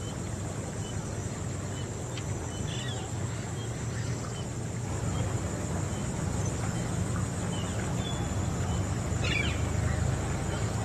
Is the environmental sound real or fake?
real